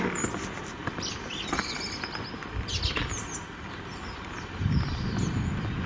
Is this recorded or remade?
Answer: recorded